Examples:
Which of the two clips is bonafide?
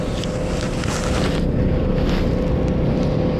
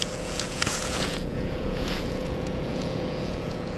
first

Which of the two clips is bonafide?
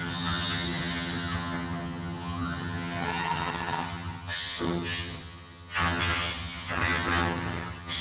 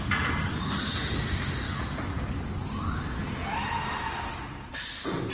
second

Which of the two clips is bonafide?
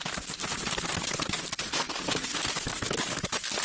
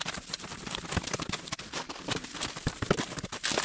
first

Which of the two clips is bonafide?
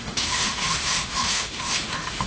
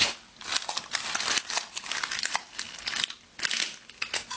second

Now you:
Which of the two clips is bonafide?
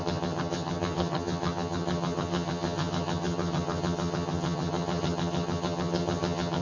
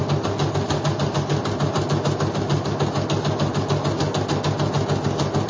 second